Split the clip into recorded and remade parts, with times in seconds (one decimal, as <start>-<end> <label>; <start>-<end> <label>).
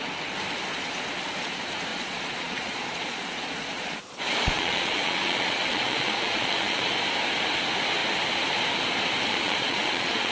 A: 0.0-1.9 recorded; 1.9-6.9 remade; 6.9-9.3 recorded; 9.3-10.3 remade